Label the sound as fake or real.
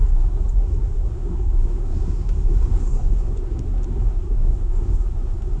fake